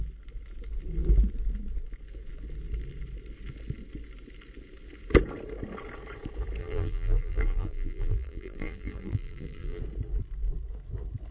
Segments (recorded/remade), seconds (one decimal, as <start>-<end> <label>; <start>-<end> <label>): 0.0-6.6 recorded; 6.6-9.8 remade; 9.8-11.3 recorded

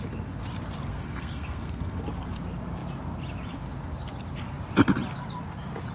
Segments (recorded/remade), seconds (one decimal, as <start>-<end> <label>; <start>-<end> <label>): 0.0-0.9 recorded; 0.9-2.0 remade; 2.0-5.9 recorded

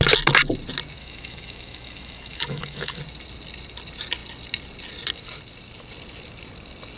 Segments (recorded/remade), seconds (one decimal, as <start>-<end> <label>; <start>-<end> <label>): 0.0-1.0 recorded; 1.0-3.0 remade; 3.0-7.0 recorded

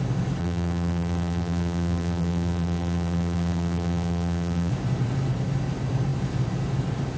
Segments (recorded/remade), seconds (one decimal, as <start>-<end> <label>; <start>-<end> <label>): 0.0-0.4 recorded; 0.4-4.7 remade; 4.7-7.2 recorded

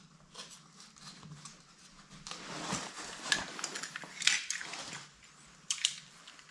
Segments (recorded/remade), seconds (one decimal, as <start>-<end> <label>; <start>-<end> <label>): 0.0-4.6 recorded; 4.6-6.5 remade

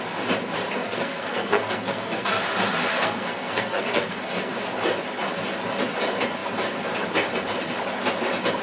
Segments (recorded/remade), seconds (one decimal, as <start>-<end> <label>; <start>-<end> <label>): 0.0-0.8 recorded; 0.8-2.4 remade; 2.4-2.9 recorded; 2.9-4.5 remade; 4.5-8.6 recorded